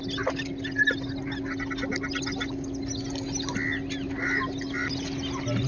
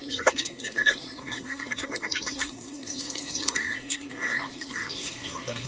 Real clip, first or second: first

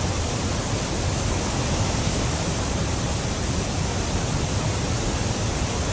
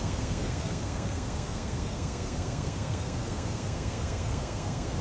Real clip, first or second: first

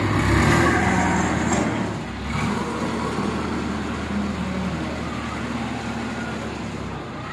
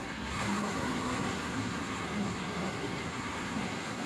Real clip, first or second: first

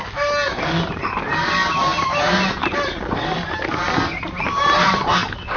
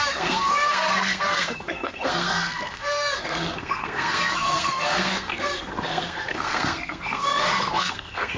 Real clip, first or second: first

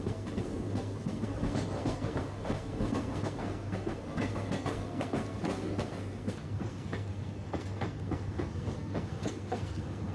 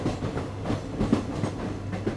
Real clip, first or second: second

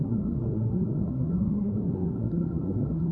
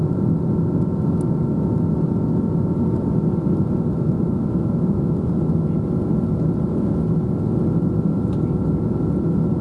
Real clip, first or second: second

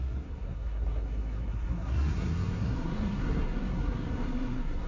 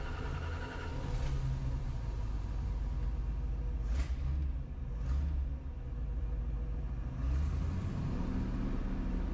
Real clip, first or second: second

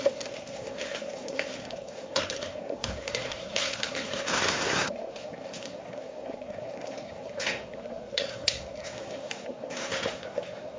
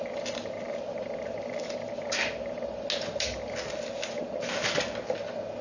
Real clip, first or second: second